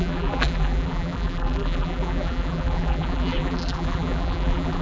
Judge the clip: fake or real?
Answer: fake